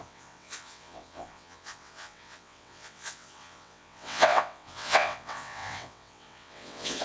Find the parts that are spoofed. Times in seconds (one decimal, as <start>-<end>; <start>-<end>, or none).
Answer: 0.0-7.0